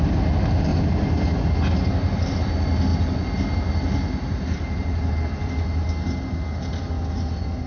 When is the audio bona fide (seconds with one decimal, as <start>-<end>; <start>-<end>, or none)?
0.0-7.7